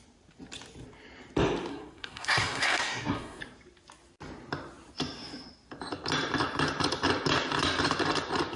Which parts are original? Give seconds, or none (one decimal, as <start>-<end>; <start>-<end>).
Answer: 0.0-1.7; 3.4-8.6